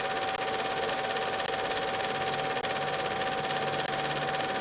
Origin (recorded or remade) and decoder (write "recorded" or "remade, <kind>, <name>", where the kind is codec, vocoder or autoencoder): recorded